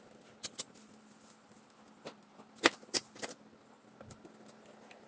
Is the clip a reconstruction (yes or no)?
no